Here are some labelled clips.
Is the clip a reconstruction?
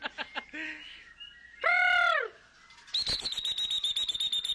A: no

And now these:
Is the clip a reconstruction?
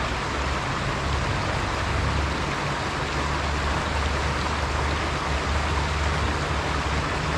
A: no